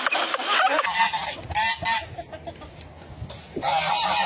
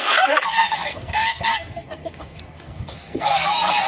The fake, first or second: second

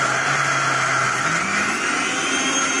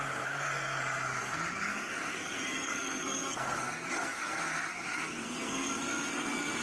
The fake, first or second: second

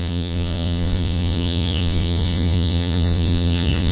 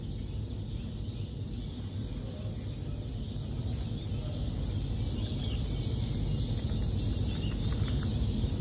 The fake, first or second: first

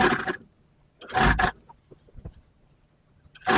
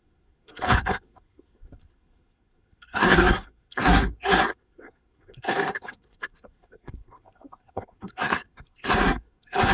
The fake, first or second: second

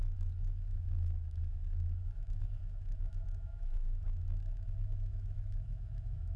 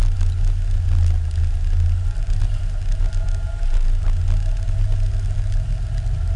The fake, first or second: first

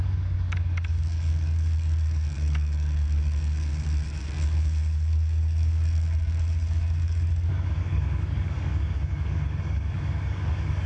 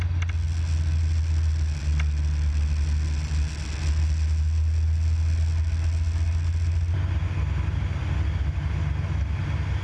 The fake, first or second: first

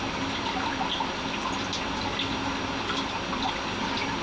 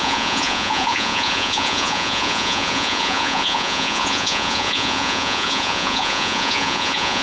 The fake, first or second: second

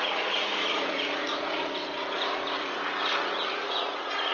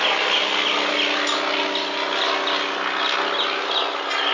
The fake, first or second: first